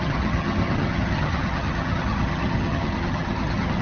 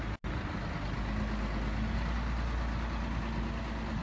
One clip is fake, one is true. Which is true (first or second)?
second